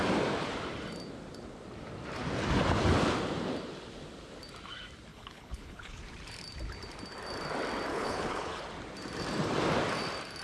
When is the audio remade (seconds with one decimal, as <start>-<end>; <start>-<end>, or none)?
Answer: 5.1-6.0; 7.9-8.6